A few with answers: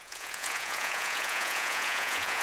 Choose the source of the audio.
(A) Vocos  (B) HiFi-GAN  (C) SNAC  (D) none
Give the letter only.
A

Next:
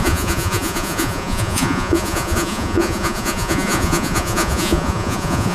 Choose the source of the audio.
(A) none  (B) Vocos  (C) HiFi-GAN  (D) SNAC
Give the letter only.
B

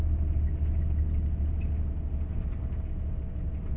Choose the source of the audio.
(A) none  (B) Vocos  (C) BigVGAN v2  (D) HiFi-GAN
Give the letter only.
A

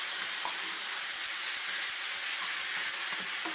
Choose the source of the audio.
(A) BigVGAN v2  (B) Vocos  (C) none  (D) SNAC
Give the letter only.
C